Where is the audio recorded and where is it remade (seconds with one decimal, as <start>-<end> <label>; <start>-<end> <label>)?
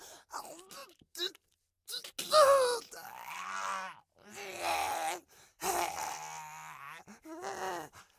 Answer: 0.0-0.8 recorded; 0.8-1.9 remade; 1.9-8.2 recorded